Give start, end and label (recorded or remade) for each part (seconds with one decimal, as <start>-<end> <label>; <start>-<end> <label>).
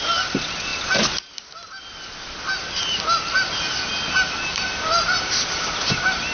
0.0-6.3 recorded